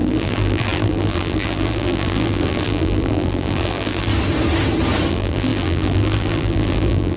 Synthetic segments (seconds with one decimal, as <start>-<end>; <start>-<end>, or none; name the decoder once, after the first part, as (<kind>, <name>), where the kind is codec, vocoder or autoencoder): 0.0-4.1 (vocoder, BigVGAN v2); 5.1-7.2